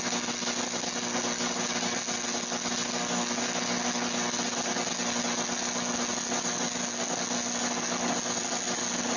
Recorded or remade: recorded